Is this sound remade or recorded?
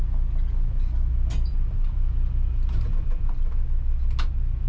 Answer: recorded